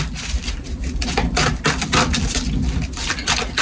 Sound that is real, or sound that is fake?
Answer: real